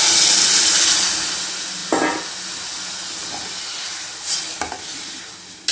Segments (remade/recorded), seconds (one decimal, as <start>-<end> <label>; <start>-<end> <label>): 0.0-5.7 recorded